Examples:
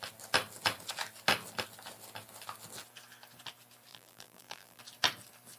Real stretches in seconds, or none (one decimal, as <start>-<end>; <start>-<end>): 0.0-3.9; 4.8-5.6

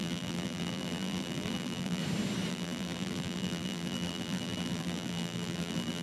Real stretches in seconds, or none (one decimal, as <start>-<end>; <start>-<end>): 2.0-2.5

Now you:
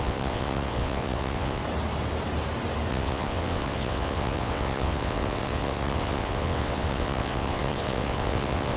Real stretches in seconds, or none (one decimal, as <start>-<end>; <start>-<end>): 1.6-2.9

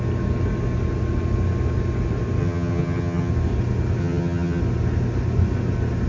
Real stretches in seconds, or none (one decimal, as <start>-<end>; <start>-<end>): 0.0-2.4; 3.3-4.0; 4.6-6.1